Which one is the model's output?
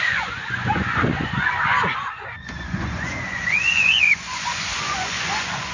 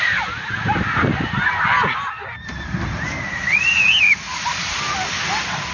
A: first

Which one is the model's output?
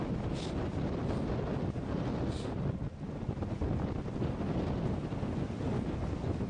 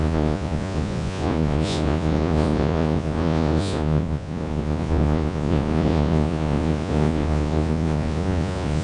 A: second